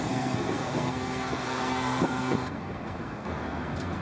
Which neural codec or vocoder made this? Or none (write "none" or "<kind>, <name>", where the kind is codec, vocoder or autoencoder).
codec, SNAC